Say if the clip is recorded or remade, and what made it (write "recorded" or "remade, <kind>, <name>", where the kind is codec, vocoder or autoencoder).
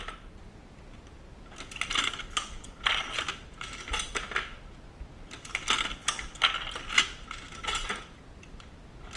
recorded